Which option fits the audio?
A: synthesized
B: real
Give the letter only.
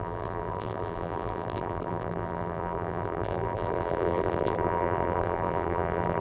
A